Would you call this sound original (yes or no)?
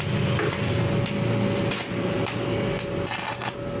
yes